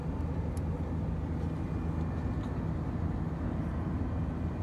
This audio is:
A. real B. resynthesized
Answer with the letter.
A